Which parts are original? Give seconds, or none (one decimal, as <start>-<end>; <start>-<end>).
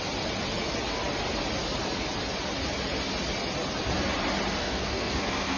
0.0-4.6